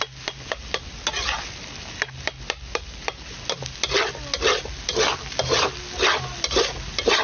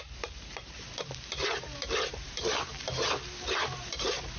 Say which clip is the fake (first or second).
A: second